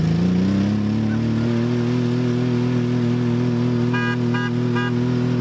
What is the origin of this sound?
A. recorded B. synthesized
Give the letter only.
A